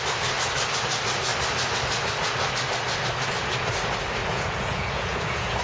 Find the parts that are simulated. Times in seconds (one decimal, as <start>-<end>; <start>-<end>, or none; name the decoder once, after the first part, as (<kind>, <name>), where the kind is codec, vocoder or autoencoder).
4.2-5.6 (vocoder, Vocos)